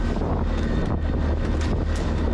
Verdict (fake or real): real